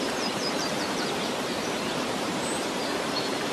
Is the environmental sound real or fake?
fake